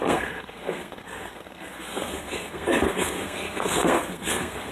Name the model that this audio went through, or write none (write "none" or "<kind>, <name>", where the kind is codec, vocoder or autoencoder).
codec, SNAC